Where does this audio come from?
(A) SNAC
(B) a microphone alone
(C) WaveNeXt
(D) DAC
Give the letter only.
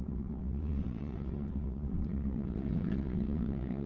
C